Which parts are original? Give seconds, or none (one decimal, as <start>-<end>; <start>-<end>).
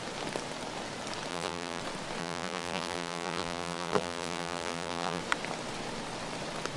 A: 0.0-1.3; 1.8-2.2; 5.2-6.8